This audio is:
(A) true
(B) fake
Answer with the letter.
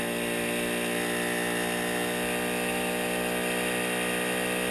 A